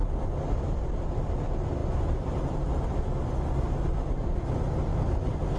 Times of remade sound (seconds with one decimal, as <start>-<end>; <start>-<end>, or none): 1.8-3.3